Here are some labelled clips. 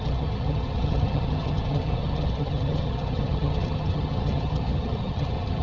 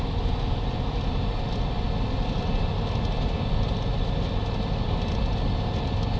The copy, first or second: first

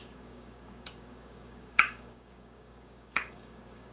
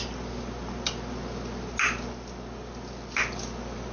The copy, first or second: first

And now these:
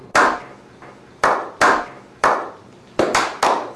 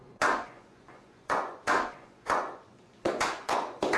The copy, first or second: second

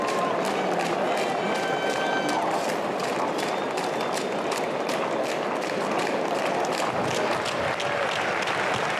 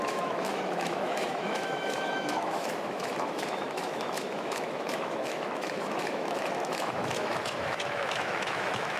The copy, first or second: second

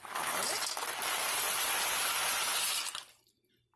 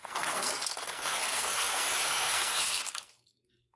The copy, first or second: second